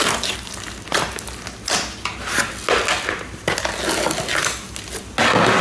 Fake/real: real